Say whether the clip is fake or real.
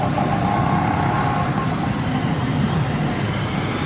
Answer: real